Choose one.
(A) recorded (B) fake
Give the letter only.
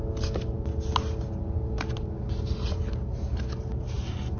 A